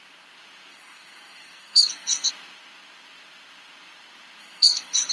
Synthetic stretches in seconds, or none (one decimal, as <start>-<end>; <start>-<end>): 0.7-2.3; 4.4-5.1